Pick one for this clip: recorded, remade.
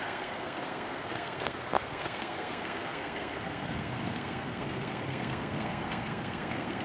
remade